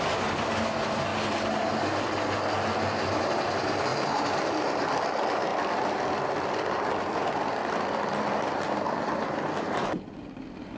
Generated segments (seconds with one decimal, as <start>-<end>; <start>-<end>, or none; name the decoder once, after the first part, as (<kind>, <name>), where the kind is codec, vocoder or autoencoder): 0.0-1.1 (vocoder, BigVGAN v2); 3.1-10.8